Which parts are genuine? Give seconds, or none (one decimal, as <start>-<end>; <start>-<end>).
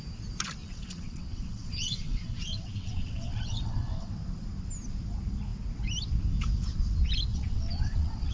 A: 0.0-0.6; 4.1-7.3